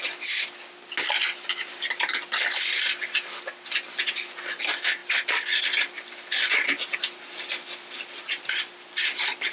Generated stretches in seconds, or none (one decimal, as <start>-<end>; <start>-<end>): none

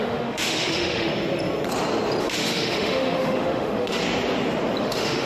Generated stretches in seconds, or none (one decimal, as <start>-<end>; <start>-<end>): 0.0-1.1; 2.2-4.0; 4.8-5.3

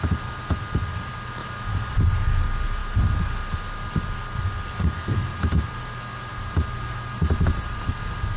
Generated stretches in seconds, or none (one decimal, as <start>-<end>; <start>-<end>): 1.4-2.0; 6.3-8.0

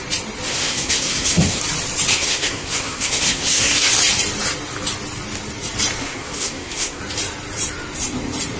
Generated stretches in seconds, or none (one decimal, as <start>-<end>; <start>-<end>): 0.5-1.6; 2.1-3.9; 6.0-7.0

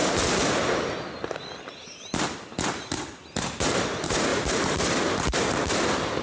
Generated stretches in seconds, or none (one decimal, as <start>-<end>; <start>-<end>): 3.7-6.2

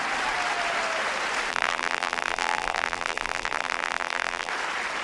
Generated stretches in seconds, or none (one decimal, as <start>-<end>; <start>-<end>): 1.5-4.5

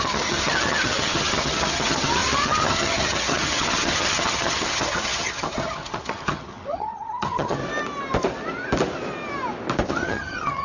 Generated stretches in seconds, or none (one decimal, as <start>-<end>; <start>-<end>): 0.0-7.6; 9.9-10.6

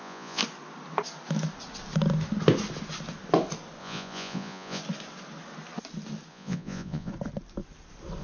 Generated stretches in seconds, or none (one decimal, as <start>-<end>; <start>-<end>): 0.0-0.4; 3.8-4.8; 6.3-7.1